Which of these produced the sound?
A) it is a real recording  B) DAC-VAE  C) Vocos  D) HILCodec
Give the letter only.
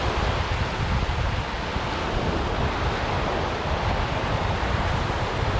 A